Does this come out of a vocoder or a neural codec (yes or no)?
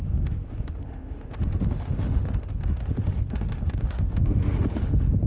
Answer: yes